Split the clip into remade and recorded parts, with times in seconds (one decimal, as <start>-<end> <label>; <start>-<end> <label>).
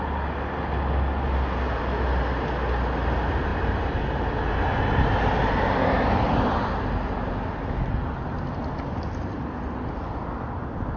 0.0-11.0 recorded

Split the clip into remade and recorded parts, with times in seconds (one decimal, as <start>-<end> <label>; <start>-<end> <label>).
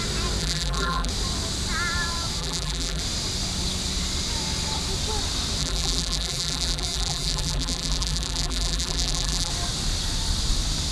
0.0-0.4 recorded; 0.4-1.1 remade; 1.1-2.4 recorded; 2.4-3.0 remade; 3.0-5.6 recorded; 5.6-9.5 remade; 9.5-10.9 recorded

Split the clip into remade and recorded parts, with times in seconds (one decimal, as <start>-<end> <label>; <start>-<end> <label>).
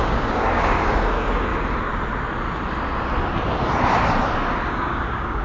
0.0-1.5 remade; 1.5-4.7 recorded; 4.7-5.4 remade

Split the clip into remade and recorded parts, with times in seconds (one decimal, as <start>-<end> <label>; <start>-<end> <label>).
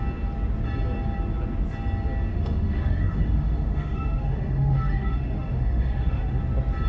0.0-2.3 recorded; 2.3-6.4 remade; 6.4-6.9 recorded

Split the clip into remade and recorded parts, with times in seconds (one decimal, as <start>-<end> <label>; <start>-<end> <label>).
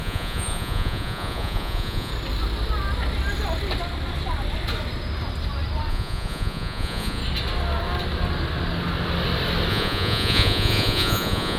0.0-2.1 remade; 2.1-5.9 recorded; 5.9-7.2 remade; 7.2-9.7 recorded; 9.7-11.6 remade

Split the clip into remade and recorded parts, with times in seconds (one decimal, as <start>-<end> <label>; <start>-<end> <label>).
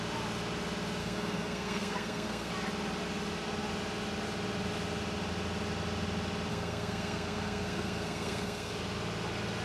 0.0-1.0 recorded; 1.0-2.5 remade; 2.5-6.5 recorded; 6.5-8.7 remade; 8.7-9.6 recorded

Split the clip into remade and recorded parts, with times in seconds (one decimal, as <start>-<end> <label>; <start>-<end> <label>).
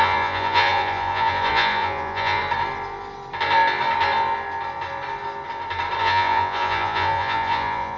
0.0-2.4 remade; 2.4-6.0 recorded; 6.0-8.0 remade